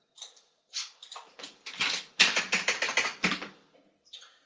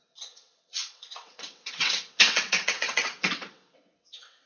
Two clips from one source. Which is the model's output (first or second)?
second